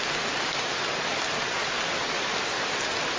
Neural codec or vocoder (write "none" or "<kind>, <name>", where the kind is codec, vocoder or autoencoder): none